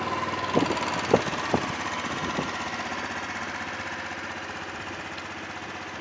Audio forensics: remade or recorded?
recorded